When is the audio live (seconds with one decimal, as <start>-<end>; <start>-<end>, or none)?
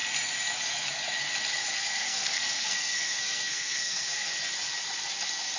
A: 0.0-1.8; 4.3-5.6